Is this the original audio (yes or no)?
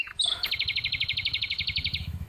no